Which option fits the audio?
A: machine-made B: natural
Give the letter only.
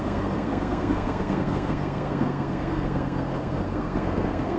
A